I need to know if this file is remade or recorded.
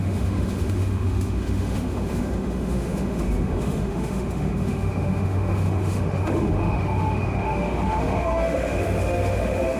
remade